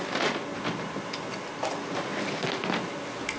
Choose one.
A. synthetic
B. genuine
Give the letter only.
B